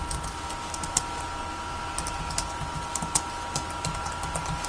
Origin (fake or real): real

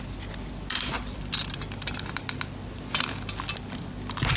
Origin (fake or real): real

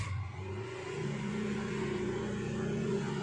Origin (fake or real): fake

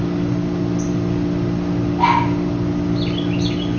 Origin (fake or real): real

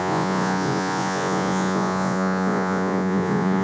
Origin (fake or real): fake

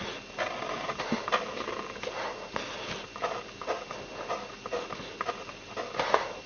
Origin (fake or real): real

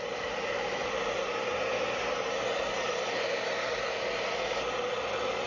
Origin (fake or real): real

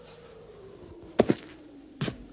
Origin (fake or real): real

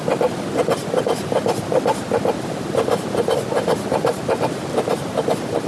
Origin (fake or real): real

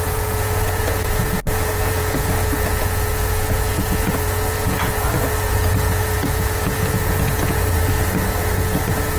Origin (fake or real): fake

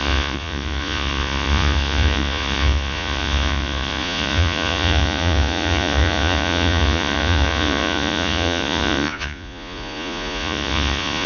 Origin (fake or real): fake